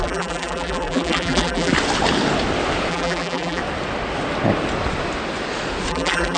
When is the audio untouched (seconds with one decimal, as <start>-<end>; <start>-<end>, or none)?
1.7-2.9; 3.6-5.9